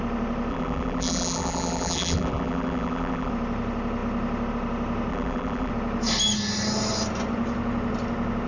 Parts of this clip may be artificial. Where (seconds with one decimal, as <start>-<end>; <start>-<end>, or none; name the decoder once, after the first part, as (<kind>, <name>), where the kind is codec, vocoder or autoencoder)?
0.5-3.3 (vocoder, BigVGAN v2); 5.1-5.7